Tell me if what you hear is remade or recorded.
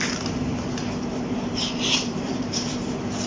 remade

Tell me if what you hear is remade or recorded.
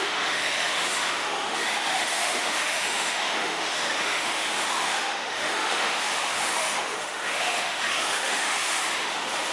remade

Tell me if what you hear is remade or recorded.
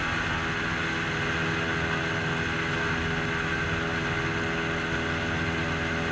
recorded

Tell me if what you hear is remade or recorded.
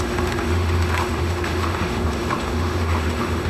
remade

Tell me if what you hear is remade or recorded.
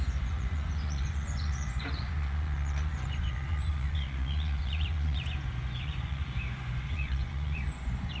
remade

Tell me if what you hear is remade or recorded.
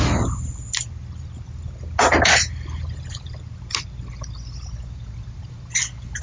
recorded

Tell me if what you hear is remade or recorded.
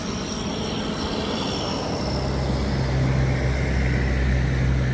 recorded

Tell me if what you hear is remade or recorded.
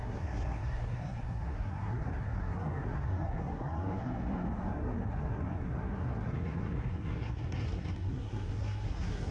remade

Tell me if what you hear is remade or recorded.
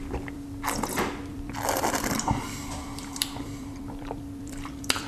remade